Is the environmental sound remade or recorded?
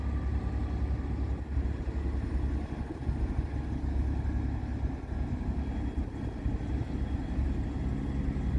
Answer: recorded